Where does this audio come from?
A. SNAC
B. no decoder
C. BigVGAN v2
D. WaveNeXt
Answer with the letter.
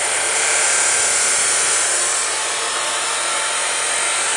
B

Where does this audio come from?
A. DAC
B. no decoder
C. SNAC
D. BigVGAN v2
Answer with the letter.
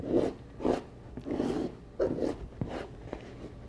B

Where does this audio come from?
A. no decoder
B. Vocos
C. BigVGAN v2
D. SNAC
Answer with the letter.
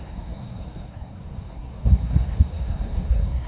D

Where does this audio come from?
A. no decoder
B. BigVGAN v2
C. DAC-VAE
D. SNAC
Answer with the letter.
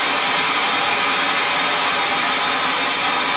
A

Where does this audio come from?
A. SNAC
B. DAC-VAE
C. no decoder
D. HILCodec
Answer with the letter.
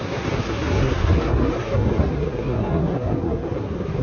A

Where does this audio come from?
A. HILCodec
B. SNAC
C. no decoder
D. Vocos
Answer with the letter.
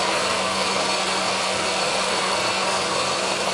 B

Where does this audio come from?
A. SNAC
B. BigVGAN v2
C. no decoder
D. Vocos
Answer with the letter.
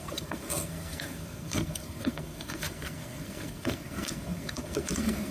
A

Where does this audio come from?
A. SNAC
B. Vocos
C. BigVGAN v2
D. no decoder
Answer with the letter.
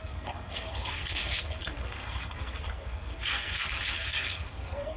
A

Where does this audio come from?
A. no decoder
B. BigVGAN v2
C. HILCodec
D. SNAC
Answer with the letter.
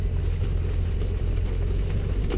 A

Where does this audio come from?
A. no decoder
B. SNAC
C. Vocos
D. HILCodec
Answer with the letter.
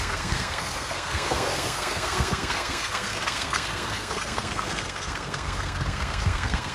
B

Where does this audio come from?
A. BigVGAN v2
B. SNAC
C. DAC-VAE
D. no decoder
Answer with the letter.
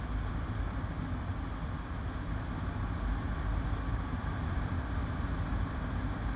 D